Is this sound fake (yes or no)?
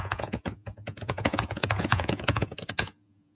yes